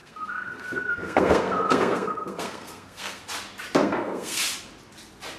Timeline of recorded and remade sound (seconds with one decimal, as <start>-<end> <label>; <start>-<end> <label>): 0.0-3.2 remade; 3.2-3.8 recorded; 3.8-4.4 remade; 4.4-5.4 recorded